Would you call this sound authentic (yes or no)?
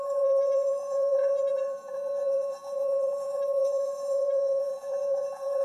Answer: no